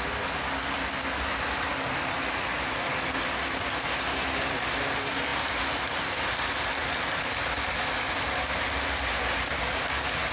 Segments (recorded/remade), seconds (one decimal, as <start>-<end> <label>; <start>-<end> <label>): 0.0-10.3 recorded